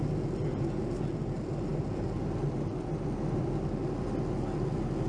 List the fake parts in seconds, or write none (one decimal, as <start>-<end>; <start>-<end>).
none